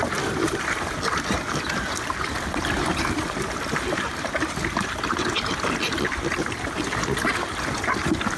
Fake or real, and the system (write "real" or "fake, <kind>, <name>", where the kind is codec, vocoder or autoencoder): real